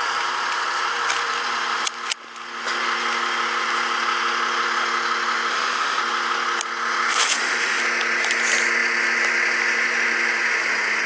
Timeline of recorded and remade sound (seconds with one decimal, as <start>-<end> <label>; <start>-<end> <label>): 0.0-5.5 recorded; 5.5-6.0 remade; 6.0-7.1 recorded; 7.1-7.8 remade; 7.8-11.1 recorded